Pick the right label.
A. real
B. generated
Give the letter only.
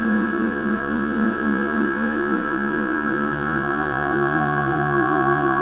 B